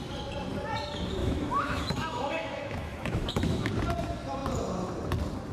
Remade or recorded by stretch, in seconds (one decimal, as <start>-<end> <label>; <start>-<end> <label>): 0.0-1.2 recorded; 1.2-3.7 remade; 3.7-5.5 recorded